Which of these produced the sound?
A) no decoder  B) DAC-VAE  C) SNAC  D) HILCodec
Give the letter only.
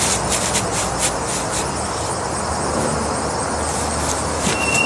A